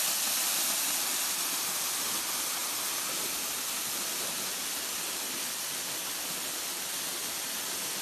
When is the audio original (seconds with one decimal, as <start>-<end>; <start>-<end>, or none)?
0.0-8.0